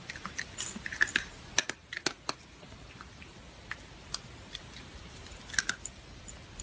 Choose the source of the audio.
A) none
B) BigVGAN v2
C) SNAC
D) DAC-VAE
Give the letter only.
A